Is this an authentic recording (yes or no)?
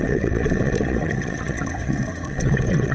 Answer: no